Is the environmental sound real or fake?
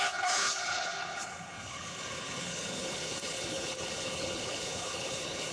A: fake